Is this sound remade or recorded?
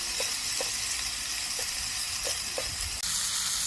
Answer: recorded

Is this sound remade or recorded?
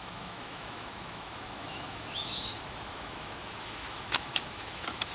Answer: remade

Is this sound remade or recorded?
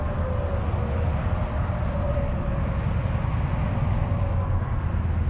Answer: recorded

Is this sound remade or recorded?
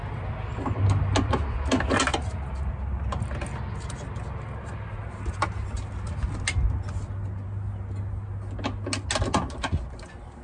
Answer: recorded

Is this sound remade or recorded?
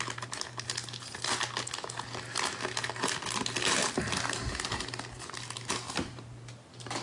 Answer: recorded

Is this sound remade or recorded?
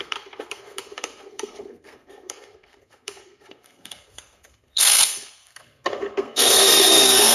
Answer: remade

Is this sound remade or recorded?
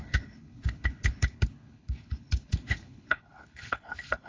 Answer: remade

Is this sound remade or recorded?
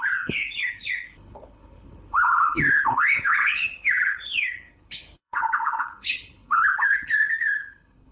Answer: remade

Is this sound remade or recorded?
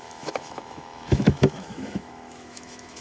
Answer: remade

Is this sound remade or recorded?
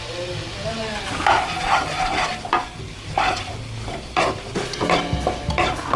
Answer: recorded